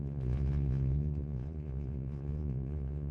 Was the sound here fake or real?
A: fake